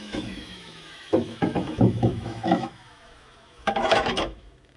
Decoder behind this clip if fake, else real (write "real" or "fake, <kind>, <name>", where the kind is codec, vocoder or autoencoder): fake, autoencoder, DAC-VAE